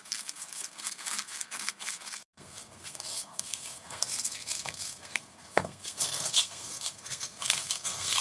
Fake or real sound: fake